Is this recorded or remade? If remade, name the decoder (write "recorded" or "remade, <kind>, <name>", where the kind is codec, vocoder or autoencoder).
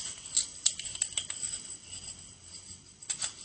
recorded